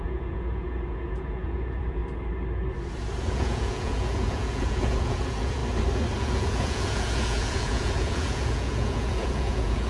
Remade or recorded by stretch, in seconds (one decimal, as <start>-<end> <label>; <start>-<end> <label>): 0.0-2.0 remade; 2.0-3.2 recorded; 3.2-5.6 remade; 5.6-6.2 recorded; 6.2-9.9 remade

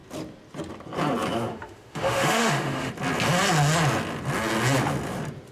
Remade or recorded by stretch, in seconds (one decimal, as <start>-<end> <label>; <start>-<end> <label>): 0.0-1.5 recorded; 1.5-2.9 remade; 2.9-5.5 recorded

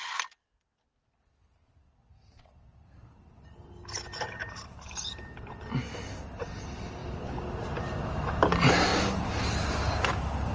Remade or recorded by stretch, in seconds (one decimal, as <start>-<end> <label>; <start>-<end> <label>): 0.0-10.5 recorded

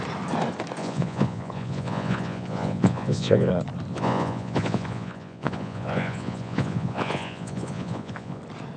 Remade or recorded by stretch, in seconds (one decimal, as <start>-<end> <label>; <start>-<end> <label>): 0.0-0.8 recorded; 0.8-3.5 remade; 3.5-3.9 recorded; 3.9-8.4 remade; 8.4-8.8 recorded

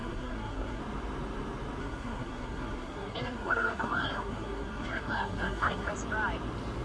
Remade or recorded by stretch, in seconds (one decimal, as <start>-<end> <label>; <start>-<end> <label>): 0.0-0.8 remade; 0.8-1.8 recorded; 1.8-5.9 remade; 5.9-6.8 recorded

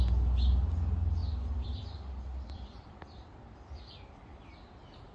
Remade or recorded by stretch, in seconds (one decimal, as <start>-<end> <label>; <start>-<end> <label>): 0.0-1.2 recorded; 1.2-3.7 remade; 3.7-5.1 recorded

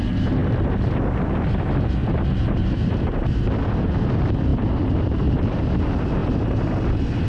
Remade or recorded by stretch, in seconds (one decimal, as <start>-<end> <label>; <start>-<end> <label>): 0.0-2.0 recorded; 2.0-3.6 remade; 3.6-6.2 recorded; 6.2-6.7 remade; 6.7-7.3 recorded